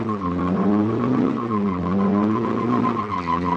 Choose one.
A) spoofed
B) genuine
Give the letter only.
A